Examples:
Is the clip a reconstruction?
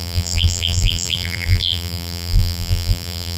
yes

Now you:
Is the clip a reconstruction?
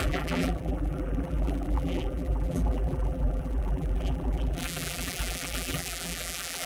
yes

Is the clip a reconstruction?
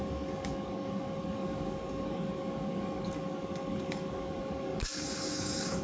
yes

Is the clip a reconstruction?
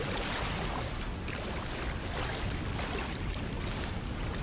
no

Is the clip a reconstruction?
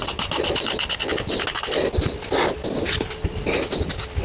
no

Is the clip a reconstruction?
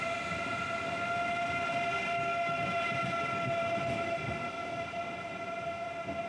no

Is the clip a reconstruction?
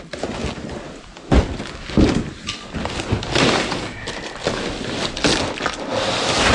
no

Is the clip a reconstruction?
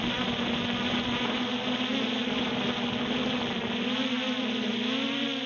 no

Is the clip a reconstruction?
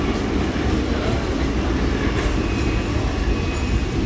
no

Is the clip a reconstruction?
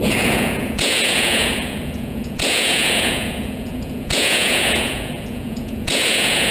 yes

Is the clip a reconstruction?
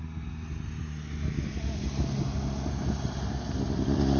no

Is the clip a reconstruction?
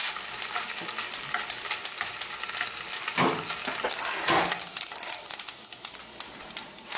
no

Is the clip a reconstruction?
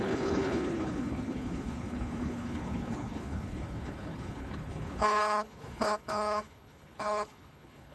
yes